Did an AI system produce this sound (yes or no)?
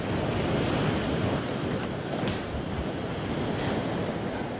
no